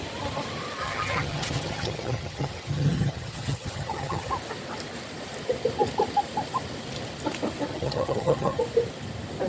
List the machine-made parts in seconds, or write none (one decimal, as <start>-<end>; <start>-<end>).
0.8-4.3; 7.7-8.6